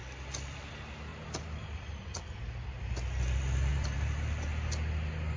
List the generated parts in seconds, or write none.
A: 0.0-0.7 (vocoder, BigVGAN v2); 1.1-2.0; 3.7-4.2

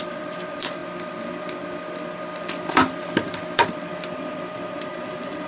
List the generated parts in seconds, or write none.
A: 0.0-0.8 (vocoder, BigVGAN v2); 3.1-3.9; 4.9-5.5

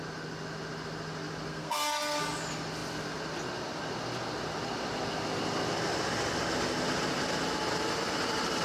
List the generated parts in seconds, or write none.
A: 1.5-2.2 (codec, SNAC)

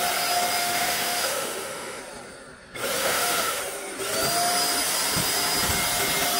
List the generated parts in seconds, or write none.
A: 0.6-2.0 (autoencoder, DAC-VAE); 3.0-3.6

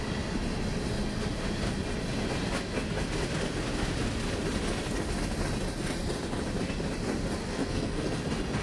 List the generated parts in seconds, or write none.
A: 7.4-8.2 (codec, SNAC)

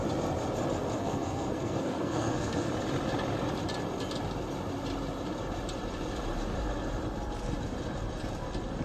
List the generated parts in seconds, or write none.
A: 1.0-2.7 (codec, SNAC)